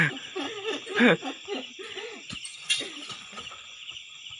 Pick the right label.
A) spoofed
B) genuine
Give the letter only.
A